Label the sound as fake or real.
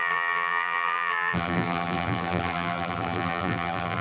fake